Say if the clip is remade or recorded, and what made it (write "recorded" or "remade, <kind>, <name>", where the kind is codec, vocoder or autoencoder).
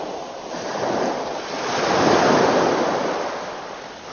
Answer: recorded